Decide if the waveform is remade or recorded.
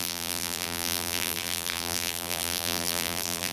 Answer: remade